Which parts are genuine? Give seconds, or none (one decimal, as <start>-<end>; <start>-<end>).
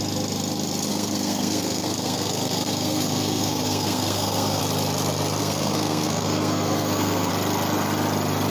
0.0-0.9; 4.6-5.4; 7.3-8.5